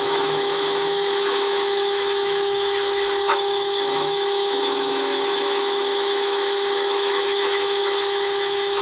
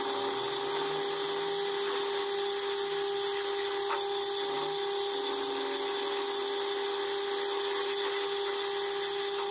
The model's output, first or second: first